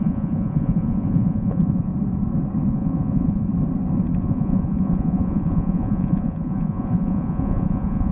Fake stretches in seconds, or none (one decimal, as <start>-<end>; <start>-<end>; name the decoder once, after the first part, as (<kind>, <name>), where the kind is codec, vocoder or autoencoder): 0.0-1.9 (vocoder, Vocos); 2.7-3.5; 4.2-8.1